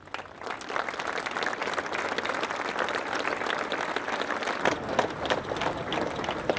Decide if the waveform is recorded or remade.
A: recorded